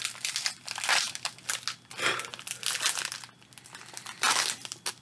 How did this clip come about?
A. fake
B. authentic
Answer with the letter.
B